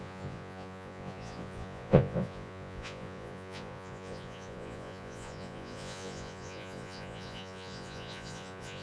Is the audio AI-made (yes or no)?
yes